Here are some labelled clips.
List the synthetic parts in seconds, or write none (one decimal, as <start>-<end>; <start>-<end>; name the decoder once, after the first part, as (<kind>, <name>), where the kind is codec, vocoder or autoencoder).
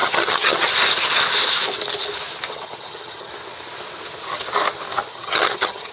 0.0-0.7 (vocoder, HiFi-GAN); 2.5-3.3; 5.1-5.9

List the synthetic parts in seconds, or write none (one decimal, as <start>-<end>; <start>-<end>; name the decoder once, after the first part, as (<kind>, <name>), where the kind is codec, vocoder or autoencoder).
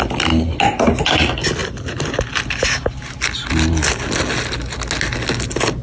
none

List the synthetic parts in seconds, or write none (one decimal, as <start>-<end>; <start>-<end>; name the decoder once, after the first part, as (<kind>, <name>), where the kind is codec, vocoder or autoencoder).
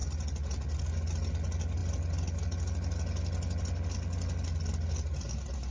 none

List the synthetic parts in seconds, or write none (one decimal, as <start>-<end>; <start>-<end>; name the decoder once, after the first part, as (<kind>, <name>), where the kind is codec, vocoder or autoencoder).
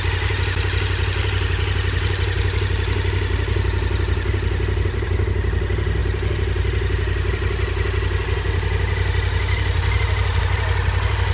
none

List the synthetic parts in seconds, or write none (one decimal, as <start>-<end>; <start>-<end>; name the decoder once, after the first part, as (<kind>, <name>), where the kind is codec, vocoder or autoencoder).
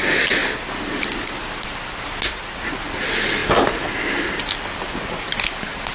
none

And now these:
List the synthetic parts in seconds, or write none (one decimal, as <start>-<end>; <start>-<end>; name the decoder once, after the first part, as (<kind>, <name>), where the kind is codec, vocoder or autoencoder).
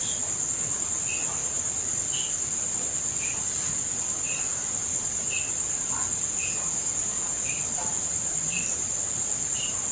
6.4-7.6 (vocoder, Vocos)